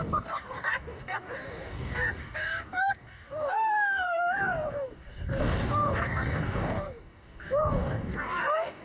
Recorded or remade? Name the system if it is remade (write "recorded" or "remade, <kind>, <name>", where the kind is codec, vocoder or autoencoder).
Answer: remade, codec, DAC